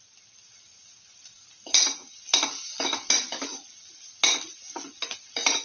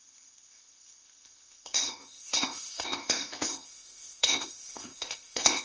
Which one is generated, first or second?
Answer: second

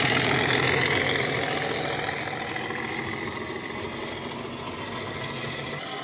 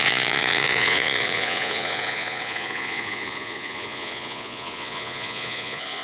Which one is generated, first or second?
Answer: second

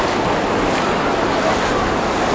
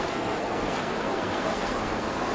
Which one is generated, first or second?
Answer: second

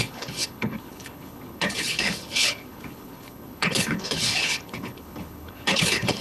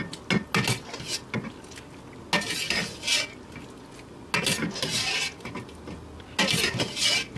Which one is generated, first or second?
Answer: first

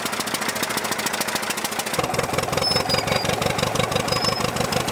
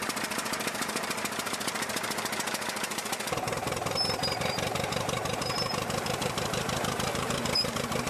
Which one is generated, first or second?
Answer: second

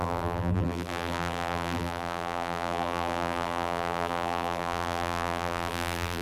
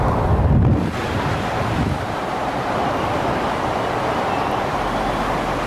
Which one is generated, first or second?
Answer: first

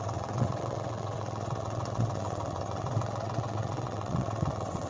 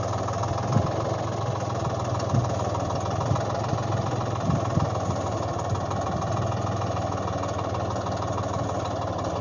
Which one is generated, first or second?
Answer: first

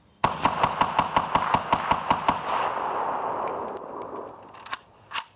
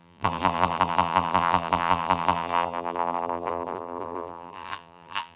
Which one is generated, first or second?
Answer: second